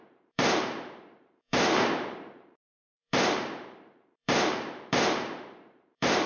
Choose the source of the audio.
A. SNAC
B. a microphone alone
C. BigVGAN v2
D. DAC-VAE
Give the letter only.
C